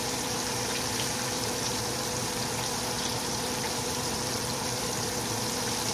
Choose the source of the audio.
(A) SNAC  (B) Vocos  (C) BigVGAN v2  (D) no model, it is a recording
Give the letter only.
C